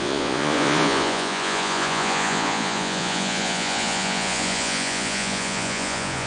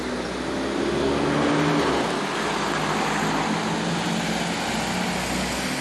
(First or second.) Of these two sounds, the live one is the second